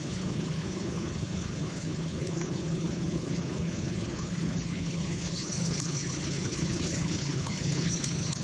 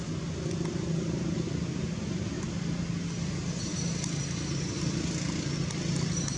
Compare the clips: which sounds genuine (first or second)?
second